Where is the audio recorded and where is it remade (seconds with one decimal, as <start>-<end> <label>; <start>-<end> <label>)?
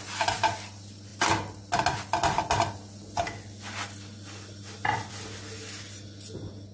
0.0-6.7 recorded